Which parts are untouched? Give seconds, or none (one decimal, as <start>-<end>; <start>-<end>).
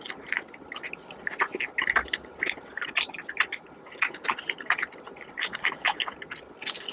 0.0-6.9